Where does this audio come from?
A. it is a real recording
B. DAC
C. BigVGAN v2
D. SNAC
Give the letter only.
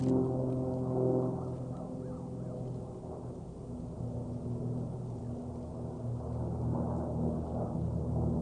A